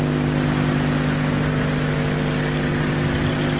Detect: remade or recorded recorded